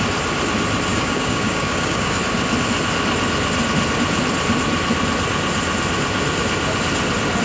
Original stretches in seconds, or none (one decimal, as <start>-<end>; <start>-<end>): 0.0-0.9; 2.2-7.4